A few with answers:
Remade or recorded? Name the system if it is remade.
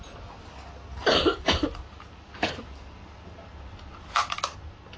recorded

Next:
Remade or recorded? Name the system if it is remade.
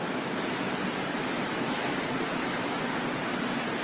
recorded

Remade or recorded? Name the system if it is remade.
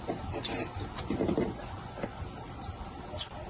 recorded